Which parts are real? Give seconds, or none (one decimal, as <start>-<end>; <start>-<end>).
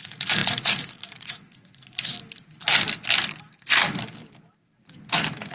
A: 2.1-5.5